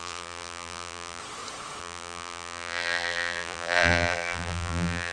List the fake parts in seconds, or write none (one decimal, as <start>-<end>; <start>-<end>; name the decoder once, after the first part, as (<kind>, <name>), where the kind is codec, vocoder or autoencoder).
0.0-1.2 (vocoder, BigVGAN v2); 1.8-5.1